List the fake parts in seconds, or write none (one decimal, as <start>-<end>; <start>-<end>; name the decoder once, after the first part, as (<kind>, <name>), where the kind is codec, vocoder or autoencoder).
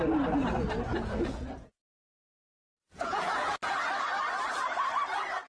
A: 0.9-3.7 (vocoder, Vocos)